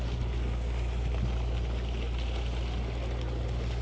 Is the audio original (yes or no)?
yes